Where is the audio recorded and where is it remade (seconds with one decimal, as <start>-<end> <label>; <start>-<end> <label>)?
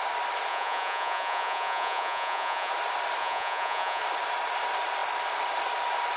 0.0-0.5 recorded; 0.5-2.7 remade; 2.7-3.2 recorded; 3.2-4.0 remade; 4.0-6.2 recorded